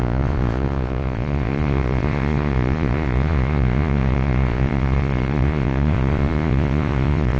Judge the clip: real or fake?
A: fake